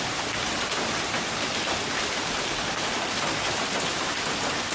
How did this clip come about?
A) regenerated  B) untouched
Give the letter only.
A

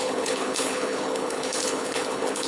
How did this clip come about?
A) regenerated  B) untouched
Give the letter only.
A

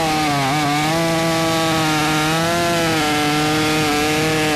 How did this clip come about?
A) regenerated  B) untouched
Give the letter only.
B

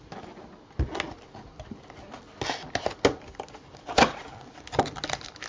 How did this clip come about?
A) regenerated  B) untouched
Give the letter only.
B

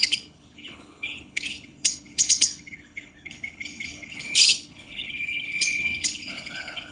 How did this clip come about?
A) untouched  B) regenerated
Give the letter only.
B